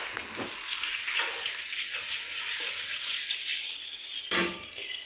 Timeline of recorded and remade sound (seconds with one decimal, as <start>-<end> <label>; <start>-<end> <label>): 0.0-5.1 recorded